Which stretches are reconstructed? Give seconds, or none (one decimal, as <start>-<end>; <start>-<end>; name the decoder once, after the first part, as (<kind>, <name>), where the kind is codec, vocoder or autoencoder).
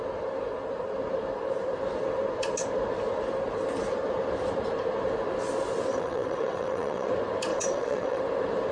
5.9-7.1 (vocoder, WaveNeXt); 7.5-8.2